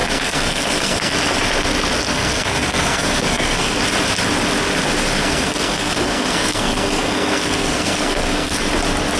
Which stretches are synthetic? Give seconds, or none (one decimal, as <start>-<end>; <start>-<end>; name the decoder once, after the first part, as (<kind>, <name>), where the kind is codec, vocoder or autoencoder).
0.0-1.1 (codec, SNAC); 2.1-3.8; 5.2-8.7